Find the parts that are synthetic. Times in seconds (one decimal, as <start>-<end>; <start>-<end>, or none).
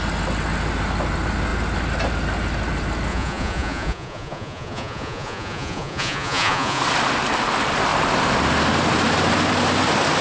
3.1-6.8